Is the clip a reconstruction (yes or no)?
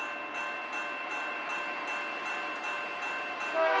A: no